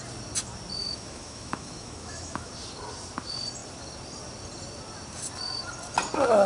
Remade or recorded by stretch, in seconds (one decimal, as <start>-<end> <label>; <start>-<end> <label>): 0.0-0.8 recorded; 0.8-2.5 remade; 2.5-6.5 recorded

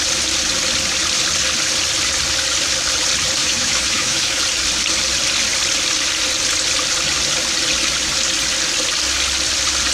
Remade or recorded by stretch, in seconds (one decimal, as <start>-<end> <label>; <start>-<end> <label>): 0.0-3.4 recorded; 3.4-4.4 remade; 4.4-9.9 recorded